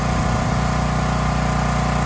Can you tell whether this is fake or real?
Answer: real